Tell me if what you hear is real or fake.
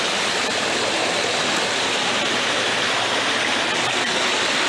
real